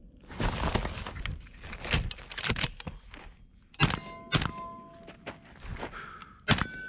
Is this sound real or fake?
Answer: real